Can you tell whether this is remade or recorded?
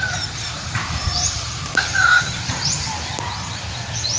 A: remade